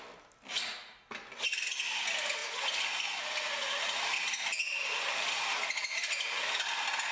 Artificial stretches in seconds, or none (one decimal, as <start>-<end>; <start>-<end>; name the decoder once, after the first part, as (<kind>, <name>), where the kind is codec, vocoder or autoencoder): none